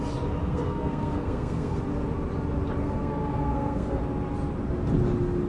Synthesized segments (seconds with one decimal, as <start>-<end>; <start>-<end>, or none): 0.4-1.8; 2.8-4.0